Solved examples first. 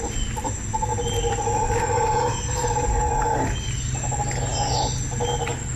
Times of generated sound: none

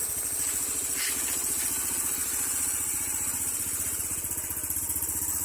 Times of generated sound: 2.2-4.0 (vocoder, BigVGAN v2)

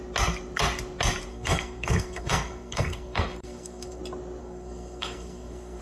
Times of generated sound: 1.3-4.0 (codec, SNAC); 4.4-5.8

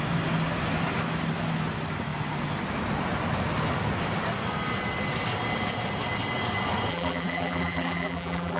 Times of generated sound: 6.9-8.6 (vocoder, BigVGAN v2)

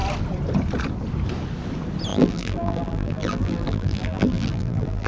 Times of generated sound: 2.1-5.1 (vocoder, BigVGAN v2)